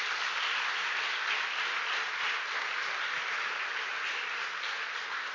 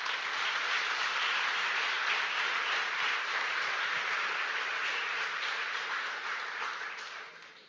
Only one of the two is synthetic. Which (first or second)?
second